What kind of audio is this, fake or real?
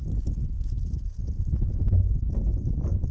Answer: real